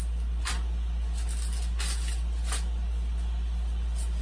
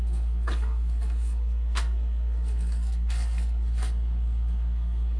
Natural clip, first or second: first